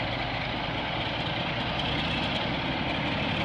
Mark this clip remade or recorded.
recorded